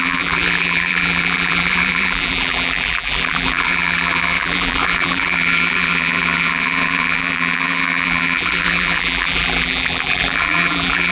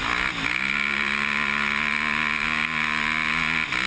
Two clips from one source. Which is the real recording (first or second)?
second